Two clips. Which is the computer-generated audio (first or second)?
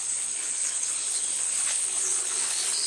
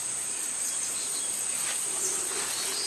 first